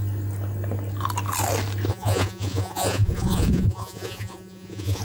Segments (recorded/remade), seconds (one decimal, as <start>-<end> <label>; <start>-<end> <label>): 0.0-1.9 recorded; 1.9-5.0 remade